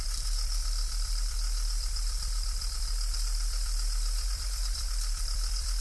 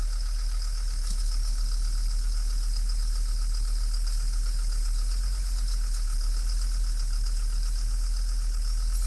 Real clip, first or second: second